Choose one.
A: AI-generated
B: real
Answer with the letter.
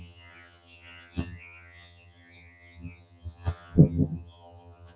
A